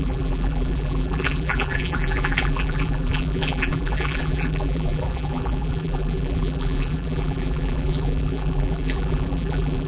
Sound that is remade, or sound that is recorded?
remade